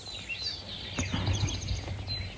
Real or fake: real